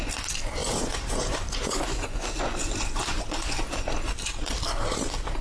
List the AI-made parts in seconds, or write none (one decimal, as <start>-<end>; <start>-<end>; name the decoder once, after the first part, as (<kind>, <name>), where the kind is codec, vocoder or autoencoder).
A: 0.6-3.8 (vocoder, Vocos)